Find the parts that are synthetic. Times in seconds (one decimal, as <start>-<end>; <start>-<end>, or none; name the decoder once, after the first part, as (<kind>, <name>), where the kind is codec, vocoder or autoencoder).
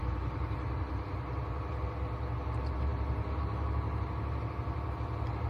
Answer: none